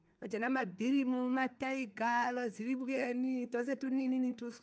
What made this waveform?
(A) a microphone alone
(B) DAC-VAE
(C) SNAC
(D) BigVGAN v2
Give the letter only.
C